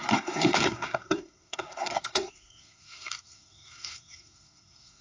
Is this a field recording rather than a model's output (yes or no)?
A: no